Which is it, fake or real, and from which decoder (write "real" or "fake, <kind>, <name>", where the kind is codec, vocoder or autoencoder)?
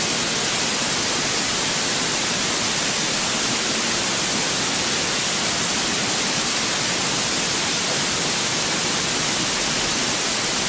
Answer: real